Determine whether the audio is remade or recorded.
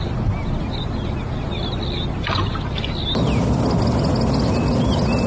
recorded